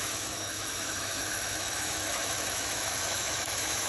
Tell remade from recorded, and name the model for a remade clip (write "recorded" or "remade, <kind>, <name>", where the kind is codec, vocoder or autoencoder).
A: remade, autoencoder, DAC-VAE